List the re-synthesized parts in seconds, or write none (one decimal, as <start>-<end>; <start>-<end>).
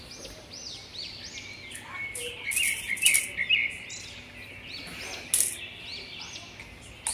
none